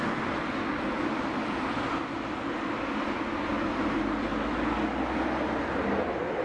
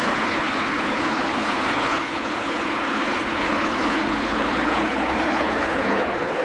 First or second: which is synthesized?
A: second